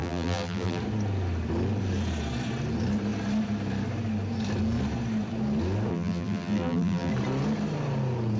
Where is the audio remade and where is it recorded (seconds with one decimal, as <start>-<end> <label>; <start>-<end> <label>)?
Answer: 0.0-0.8 remade; 0.8-5.9 recorded; 5.9-7.1 remade; 7.1-8.4 recorded